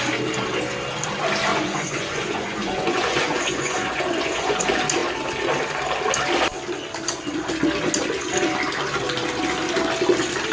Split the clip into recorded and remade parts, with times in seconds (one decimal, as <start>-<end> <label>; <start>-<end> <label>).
0.0-1.5 recorded; 1.5-4.6 remade; 4.6-10.5 recorded

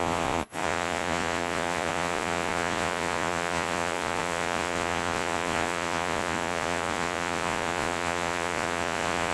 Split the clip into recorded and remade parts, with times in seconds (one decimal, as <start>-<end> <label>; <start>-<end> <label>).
0.0-9.3 remade

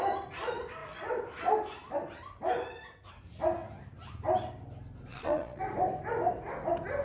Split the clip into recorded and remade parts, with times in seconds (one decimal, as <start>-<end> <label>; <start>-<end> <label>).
0.0-5.1 recorded; 5.1-5.6 remade; 5.6-7.0 recorded

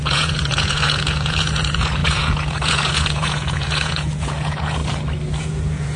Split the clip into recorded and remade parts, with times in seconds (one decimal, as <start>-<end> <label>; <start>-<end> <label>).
0.0-4.8 remade; 4.8-5.4 recorded; 5.4-6.0 remade

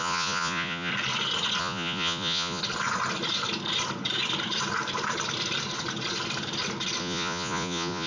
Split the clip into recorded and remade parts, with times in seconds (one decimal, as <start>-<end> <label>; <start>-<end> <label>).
0.0-0.9 remade; 0.9-1.6 recorded; 1.6-2.6 remade; 2.6-7.0 recorded; 7.0-8.1 remade